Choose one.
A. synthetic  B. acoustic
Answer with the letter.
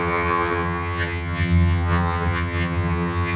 A